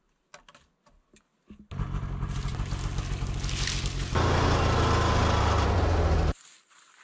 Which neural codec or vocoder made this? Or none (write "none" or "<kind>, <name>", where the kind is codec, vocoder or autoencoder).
none